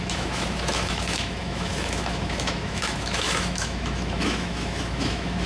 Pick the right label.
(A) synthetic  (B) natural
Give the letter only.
A